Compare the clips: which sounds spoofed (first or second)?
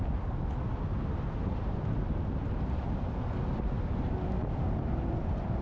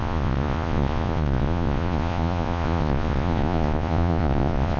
second